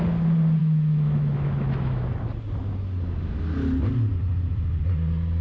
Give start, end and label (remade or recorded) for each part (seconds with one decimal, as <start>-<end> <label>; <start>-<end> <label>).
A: 0.0-0.6 recorded; 0.6-2.1 remade; 2.1-5.4 recorded